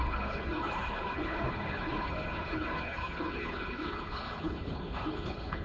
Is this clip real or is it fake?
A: fake